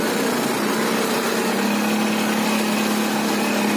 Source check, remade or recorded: recorded